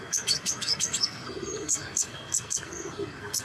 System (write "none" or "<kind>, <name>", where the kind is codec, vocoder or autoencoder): codec, SNAC